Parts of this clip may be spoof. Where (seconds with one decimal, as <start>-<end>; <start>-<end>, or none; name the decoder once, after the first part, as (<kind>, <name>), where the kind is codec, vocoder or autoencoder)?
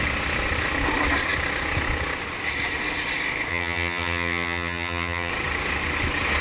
3.5-5.3 (vocoder, HiFi-GAN)